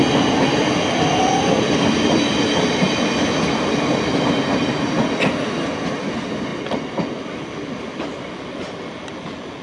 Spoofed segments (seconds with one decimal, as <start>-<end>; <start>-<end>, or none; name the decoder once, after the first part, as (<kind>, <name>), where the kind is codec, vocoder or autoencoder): none